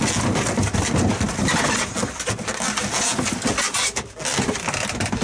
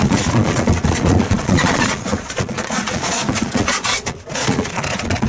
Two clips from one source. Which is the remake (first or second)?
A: second